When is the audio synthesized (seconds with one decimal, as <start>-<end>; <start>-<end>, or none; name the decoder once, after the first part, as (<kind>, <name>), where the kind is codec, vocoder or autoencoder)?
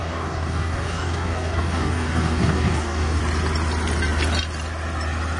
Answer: 0.0-3.2 (codec, DAC)